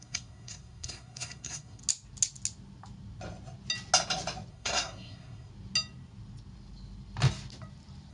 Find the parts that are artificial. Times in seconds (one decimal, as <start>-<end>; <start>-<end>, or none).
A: 0.0-1.8; 4.5-5.5